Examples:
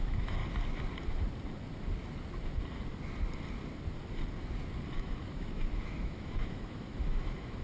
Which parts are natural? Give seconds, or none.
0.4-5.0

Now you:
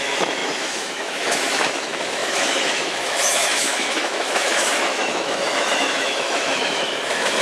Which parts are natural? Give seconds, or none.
none

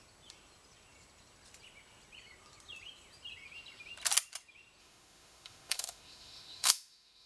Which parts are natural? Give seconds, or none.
0.0-4.8

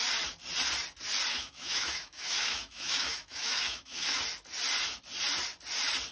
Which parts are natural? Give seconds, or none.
0.0-1.3; 4.2-6.1